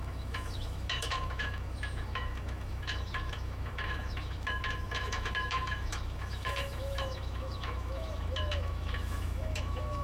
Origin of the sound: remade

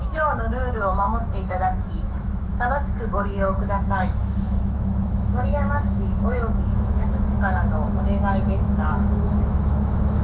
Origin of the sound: remade